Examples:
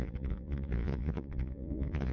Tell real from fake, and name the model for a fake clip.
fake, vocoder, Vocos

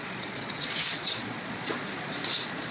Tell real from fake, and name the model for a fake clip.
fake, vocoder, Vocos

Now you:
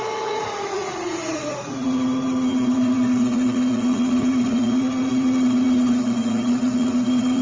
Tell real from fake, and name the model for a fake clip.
fake, vocoder, Vocos